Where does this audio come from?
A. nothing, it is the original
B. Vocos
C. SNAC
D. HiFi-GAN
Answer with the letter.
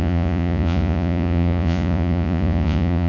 B